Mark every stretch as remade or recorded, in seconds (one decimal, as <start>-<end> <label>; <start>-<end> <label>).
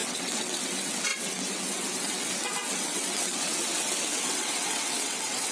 0.0-5.5 remade